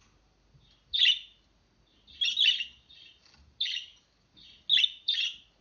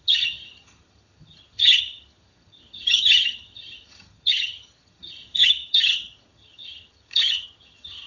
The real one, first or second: first